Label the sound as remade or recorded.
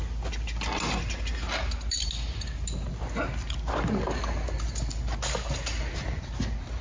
recorded